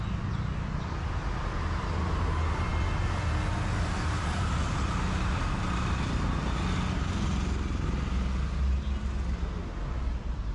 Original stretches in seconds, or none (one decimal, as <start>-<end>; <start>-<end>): 0.0-10.5